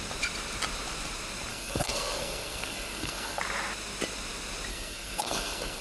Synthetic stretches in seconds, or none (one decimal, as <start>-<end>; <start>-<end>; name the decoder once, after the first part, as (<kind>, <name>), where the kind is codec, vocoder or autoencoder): 1.5-3.4 (codec, SNAC); 4.7-5.8